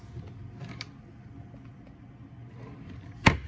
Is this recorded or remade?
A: recorded